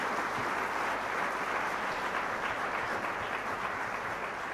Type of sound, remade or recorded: recorded